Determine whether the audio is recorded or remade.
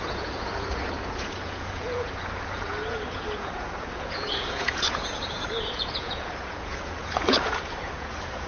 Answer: remade